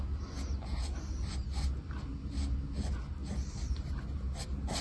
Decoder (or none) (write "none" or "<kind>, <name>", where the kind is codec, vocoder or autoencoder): none